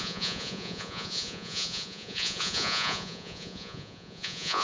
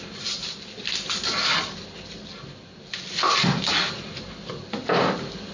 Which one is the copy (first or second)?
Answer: first